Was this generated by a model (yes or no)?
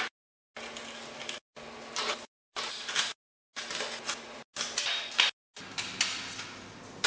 no